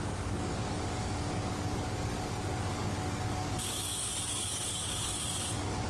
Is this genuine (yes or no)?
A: no